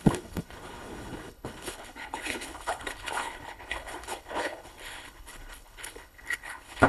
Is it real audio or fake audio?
fake